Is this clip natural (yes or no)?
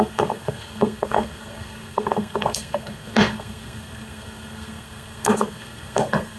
no